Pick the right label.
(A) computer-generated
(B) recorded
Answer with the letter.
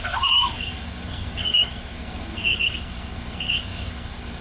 A